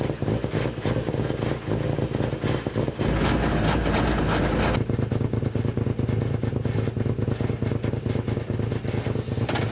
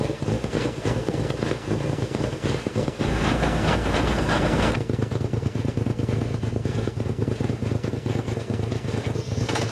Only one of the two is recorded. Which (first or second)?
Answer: first